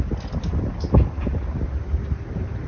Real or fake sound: real